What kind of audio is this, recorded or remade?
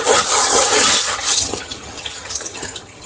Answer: remade